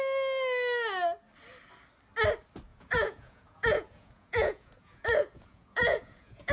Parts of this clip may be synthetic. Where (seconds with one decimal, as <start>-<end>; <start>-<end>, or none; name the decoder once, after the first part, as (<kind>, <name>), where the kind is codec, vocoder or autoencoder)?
2.7-6.5 (vocoder, Vocos)